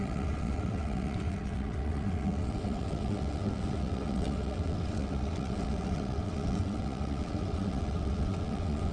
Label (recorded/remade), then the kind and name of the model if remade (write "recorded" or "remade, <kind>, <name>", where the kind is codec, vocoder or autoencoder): remade, vocoder, WaveNeXt